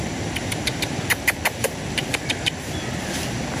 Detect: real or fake fake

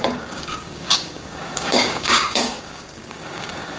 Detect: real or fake fake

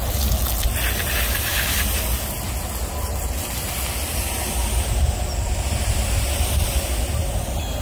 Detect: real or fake real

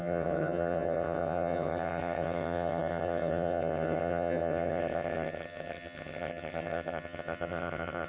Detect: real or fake fake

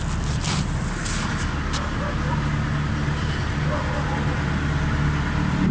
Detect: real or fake real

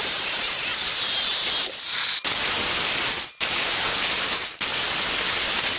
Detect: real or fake real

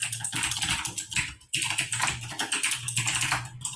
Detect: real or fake real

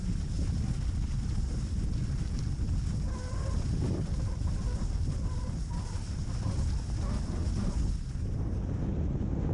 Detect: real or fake real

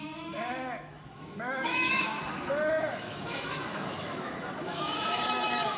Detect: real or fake fake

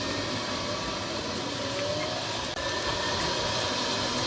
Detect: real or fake real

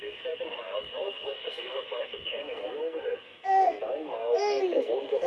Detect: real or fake fake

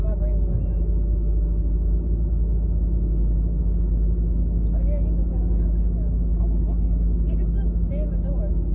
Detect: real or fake real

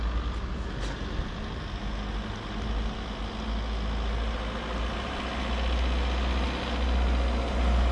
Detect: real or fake real